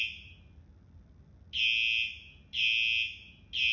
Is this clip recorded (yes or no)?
yes